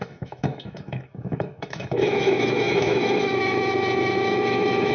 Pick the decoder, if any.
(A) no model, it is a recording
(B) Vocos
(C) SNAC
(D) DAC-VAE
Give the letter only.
D